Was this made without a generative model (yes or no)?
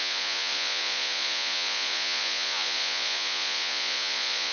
no